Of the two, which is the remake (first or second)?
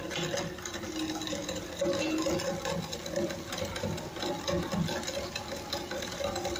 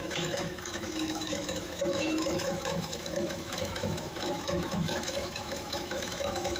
second